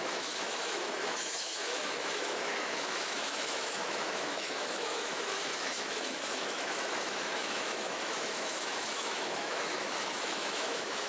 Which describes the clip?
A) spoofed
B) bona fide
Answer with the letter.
A